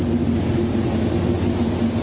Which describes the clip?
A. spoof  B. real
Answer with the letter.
B